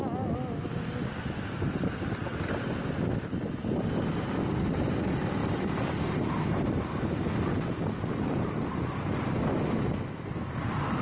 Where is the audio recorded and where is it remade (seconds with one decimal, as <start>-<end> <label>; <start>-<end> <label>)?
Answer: 0.0-5.4 recorded; 5.4-6.1 remade; 6.1-11.0 recorded